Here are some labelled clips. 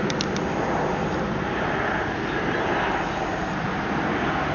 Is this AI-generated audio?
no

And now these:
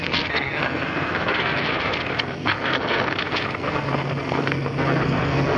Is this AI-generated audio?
yes